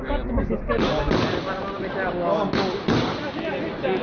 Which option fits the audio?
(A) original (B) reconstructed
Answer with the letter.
A